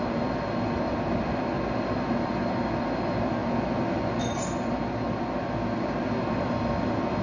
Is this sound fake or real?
real